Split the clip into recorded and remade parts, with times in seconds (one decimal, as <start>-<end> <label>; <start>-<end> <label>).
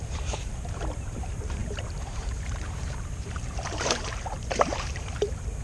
0.0-5.6 remade